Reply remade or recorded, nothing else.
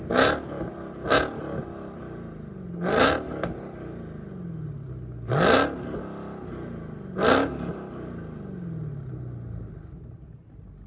recorded